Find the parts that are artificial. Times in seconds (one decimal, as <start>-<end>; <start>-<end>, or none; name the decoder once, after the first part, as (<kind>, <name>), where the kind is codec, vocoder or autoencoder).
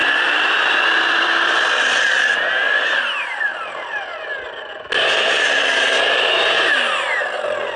1.0-4.3 (vocoder, BigVGAN v2); 5.0-7.8